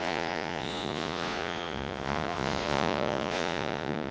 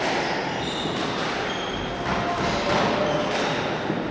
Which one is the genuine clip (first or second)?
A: second